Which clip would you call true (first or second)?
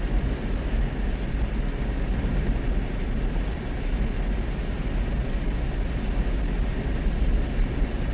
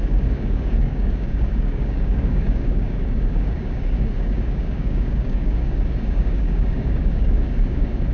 first